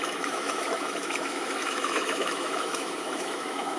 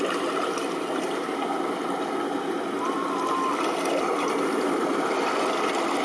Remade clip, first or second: first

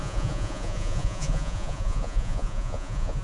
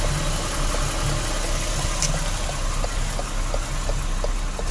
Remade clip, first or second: first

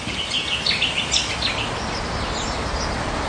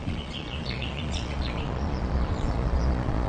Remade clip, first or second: second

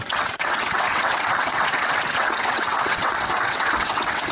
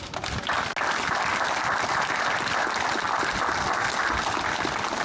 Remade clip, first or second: first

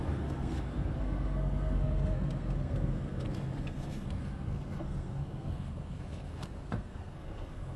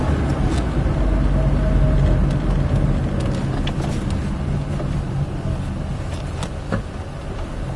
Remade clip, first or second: first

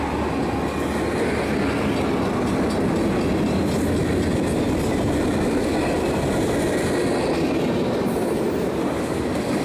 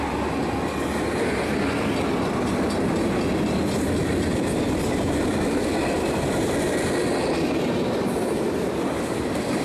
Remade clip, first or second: second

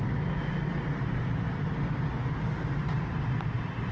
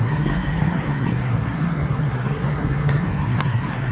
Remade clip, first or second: second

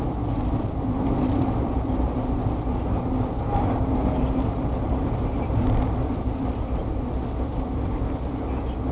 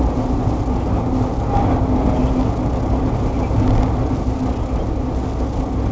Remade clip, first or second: first